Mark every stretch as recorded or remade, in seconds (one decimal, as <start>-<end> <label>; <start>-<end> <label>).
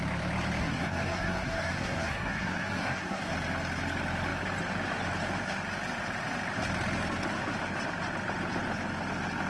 0.0-0.6 recorded; 0.6-3.3 remade; 3.3-9.5 recorded